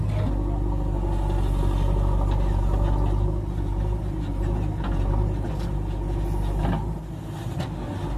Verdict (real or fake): real